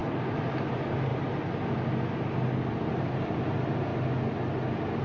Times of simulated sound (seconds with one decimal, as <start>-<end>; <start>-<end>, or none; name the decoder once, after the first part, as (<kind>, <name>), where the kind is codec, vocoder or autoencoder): 0.7-1.1 (vocoder, BigVGAN v2); 2.7-3.9